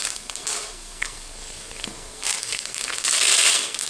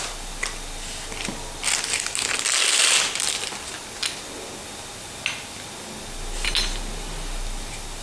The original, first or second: second